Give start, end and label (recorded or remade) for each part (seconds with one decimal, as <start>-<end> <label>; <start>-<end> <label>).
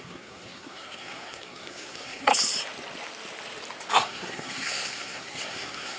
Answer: 0.0-2.3 remade; 2.3-3.9 recorded; 3.9-6.0 remade